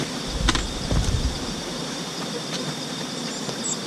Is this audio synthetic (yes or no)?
yes